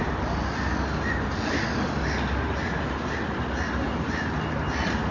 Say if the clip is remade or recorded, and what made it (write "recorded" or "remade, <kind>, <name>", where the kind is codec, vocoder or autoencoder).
recorded